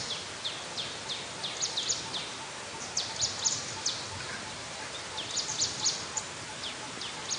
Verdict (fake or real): real